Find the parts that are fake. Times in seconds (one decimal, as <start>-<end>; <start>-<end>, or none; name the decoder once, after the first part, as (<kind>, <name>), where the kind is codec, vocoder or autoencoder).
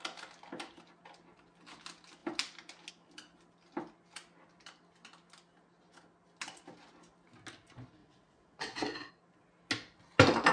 8.0-9.1 (vocoder, WaveNeXt)